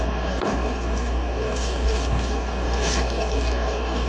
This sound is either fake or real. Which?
fake